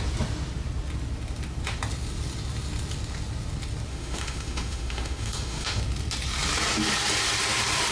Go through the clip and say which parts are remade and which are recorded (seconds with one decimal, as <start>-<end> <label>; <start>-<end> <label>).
0.0-3.9 recorded; 3.9-5.8 remade; 5.8-7.9 recorded